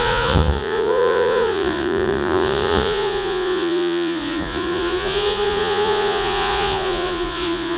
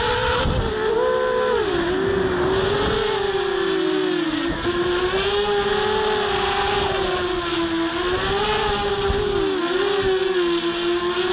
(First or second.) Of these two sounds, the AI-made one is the first